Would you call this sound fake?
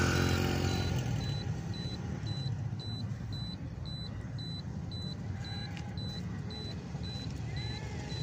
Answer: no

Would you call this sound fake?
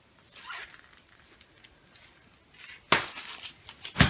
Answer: no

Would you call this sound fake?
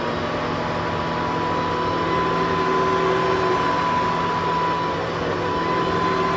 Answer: no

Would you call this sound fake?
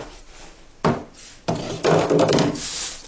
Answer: no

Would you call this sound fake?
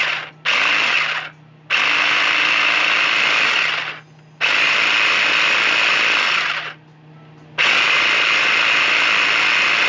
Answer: no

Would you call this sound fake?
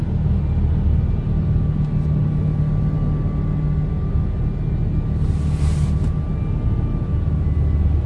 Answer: no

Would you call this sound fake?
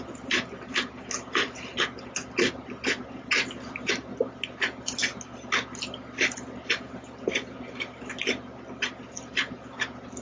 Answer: no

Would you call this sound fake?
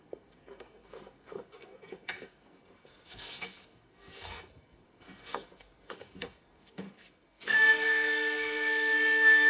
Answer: yes